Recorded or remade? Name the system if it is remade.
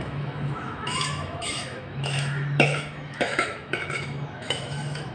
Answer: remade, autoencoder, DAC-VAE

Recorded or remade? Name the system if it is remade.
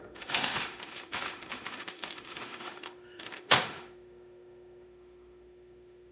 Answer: remade, autoencoder, DAC-VAE